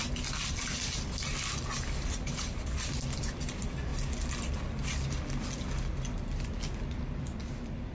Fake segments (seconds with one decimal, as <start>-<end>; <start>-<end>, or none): 0.0-1.3; 2.0-3.9; 6.9-7.9